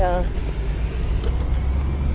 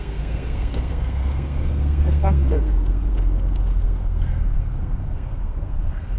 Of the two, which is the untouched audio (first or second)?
first